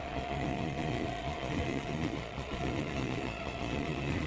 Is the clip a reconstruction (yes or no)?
yes